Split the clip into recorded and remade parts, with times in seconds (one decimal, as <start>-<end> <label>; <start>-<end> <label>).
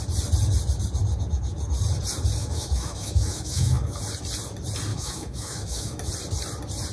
0.0-2.4 recorded; 2.4-4.0 remade; 4.0-4.9 recorded; 4.9-6.1 remade; 6.1-6.9 recorded